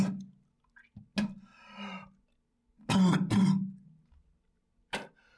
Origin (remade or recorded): recorded